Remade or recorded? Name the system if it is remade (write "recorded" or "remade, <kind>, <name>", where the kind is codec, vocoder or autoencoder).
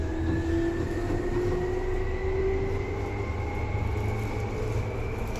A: recorded